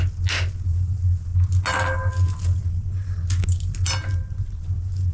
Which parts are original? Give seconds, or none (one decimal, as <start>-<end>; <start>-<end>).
0.0-5.1